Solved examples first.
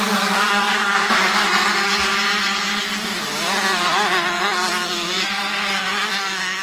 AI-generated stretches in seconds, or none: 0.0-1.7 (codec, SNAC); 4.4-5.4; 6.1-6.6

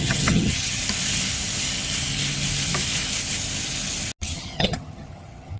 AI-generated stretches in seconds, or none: 0.0-0.8 (vocoder, HiFi-GAN); 4.2-5.6